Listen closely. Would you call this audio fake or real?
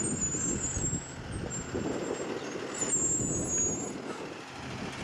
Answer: real